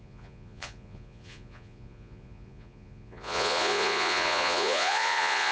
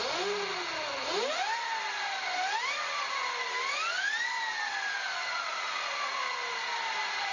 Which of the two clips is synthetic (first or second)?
first